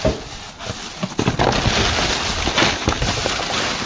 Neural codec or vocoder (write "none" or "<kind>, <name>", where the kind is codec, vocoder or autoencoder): none